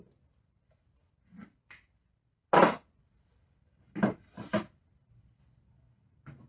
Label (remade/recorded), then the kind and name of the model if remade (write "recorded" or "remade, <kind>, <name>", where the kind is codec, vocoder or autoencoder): recorded